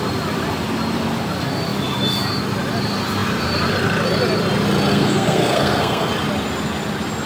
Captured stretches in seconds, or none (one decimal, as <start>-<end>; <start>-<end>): 0.0-4.9; 6.1-7.3